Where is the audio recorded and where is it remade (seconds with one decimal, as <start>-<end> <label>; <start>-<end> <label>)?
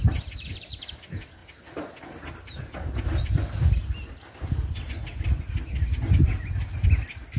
0.0-7.4 recorded